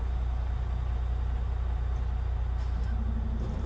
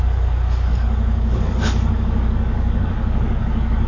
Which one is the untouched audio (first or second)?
first